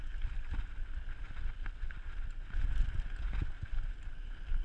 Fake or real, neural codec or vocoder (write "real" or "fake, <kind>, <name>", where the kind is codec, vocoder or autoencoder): real